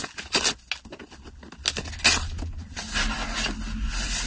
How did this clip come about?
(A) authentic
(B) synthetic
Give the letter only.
A